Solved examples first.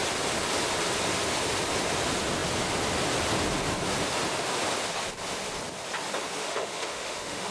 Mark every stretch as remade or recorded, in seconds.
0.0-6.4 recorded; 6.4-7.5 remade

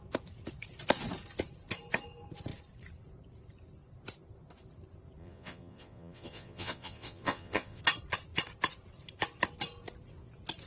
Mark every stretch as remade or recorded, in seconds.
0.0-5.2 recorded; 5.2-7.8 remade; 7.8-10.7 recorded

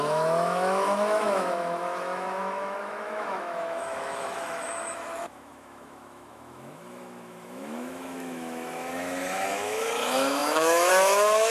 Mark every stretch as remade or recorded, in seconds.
0.0-11.5 remade